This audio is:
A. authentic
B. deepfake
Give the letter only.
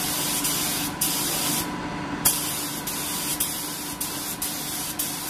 A